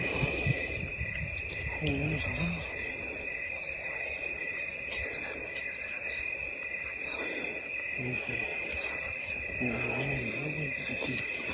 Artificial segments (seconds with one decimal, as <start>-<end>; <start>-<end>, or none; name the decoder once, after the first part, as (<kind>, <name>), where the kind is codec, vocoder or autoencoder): none